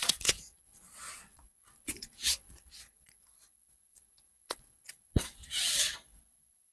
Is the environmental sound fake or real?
fake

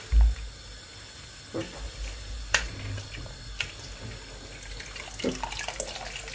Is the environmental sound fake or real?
real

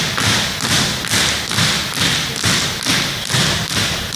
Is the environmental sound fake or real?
real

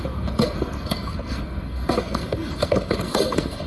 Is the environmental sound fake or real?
fake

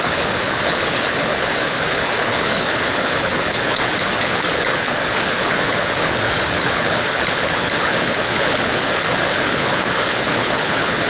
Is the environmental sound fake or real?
fake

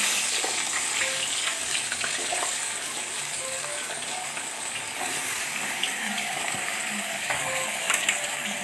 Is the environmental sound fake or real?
fake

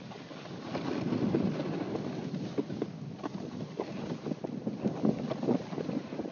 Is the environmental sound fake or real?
real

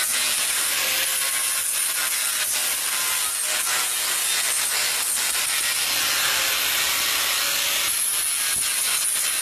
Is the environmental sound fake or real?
real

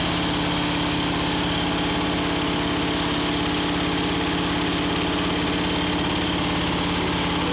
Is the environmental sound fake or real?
real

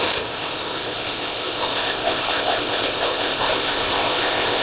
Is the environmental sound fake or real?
fake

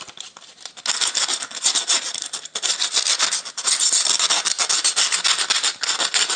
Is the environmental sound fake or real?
real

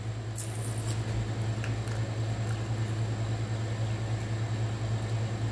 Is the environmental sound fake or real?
real